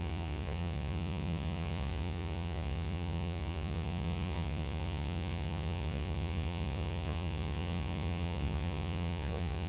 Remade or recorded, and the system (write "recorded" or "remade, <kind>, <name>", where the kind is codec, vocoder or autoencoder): remade, vocoder, Vocos